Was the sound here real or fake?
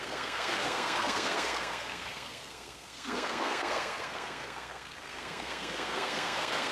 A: fake